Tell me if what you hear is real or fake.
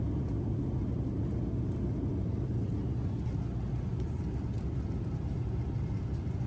real